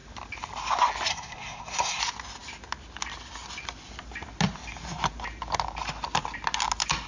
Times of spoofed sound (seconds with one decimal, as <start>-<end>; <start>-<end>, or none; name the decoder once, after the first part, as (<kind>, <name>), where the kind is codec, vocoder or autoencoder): 1.1-2.0 (codec, SNAC)